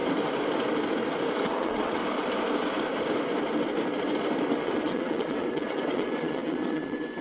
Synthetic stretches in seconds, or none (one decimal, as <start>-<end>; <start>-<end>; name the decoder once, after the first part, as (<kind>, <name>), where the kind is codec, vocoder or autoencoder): 1.3-2.0 (vocoder, WaveNeXt); 4.5-7.2